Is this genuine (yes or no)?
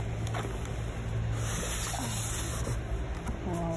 yes